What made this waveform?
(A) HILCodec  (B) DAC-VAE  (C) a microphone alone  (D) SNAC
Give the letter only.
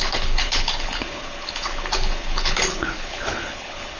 A